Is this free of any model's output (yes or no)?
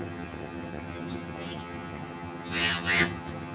no